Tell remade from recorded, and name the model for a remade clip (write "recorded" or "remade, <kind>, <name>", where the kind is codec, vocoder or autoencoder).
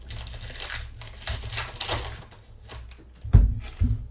recorded